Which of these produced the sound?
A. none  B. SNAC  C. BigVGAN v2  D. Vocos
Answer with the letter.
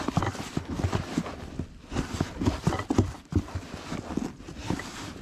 A